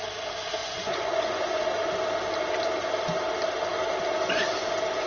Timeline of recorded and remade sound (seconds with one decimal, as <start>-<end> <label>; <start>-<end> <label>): 0.0-0.6 recorded; 0.6-1.6 remade; 1.6-5.1 recorded